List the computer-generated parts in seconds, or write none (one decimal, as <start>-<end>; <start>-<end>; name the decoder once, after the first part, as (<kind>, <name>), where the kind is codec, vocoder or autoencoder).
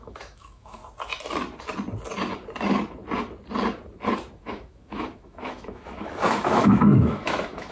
0.0-0.8 (autoencoder, DAC-VAE); 4.4-7.7